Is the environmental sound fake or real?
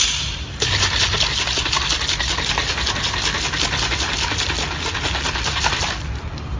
real